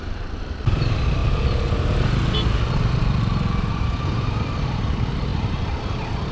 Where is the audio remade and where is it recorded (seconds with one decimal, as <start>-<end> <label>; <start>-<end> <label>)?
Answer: 0.0-1.2 remade; 1.2-3.7 recorded; 3.7-6.3 remade